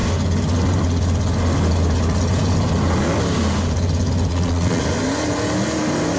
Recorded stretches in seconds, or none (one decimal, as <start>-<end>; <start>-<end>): 0.0-4.3; 4.8-6.2